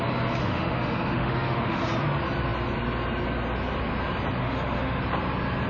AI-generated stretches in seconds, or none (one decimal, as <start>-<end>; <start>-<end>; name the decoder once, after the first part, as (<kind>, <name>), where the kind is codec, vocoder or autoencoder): 0.4-1.8 (autoencoder, DAC-VAE); 4.4-5.0